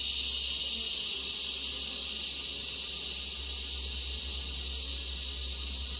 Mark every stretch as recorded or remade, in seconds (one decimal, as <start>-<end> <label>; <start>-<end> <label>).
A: 0.0-6.0 recorded